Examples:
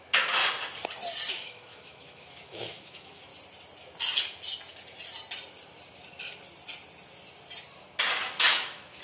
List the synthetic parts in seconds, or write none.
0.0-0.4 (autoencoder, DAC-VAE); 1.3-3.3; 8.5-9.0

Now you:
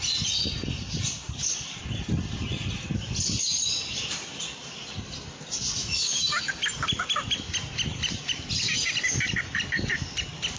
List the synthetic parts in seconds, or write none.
5.8-6.5 (autoencoder, DAC-VAE)

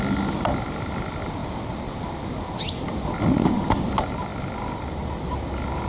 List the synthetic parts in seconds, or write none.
none

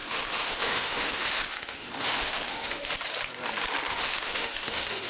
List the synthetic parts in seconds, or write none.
0.0-2.9 (autoencoder, DAC-VAE); 3.9-5.1

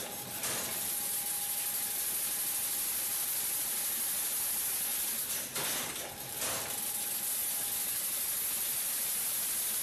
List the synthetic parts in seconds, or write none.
none